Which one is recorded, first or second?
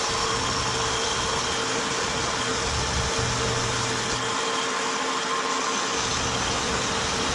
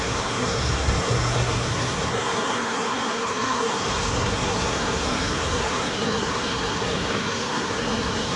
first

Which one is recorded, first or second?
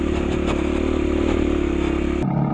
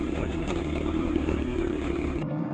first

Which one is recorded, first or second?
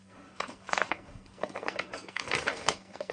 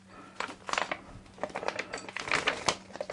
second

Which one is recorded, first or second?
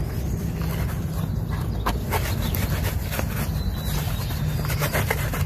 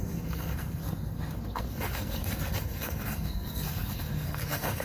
first